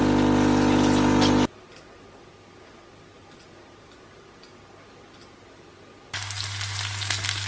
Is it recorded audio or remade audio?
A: recorded